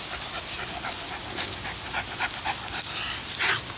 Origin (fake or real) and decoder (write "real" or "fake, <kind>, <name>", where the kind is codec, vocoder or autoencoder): real